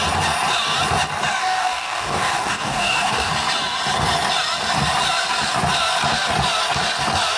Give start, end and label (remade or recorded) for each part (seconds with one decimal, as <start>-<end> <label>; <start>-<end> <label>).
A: 0.0-1.4 recorded; 1.4-3.3 remade; 3.3-7.4 recorded